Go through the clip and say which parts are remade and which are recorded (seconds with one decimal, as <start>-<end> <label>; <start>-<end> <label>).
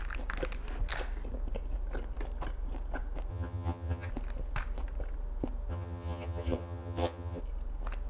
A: 0.0-3.3 recorded; 3.3-4.1 remade; 4.1-5.7 recorded; 5.7-7.4 remade; 7.4-8.1 recorded